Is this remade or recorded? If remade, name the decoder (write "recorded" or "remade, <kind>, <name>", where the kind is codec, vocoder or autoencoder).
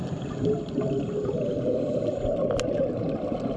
recorded